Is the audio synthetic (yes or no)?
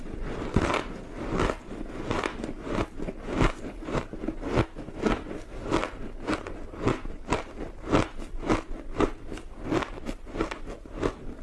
no